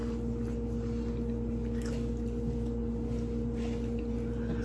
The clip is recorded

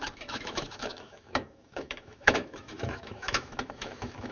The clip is remade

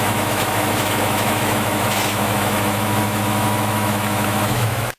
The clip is remade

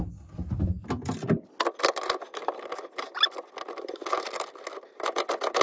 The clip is recorded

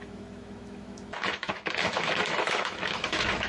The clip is remade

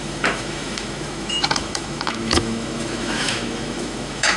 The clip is remade